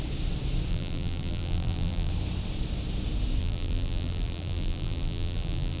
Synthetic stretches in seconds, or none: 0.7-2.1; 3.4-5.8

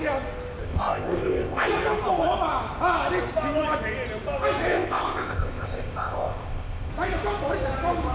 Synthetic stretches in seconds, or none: 0.6-1.7; 4.7-6.9